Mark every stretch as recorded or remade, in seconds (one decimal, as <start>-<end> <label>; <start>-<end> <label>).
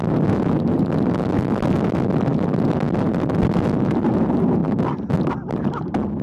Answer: 0.0-6.2 recorded